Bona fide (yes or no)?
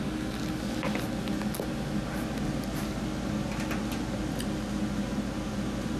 yes